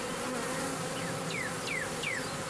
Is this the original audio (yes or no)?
yes